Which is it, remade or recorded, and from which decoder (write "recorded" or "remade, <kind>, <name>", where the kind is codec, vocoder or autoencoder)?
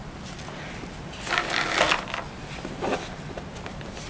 recorded